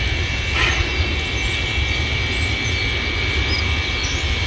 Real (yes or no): yes